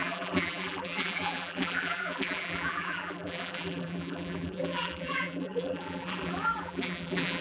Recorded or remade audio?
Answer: remade